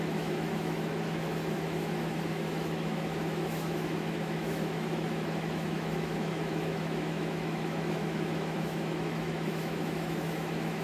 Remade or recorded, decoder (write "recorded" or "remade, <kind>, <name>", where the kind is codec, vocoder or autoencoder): remade, autoencoder, DAC-VAE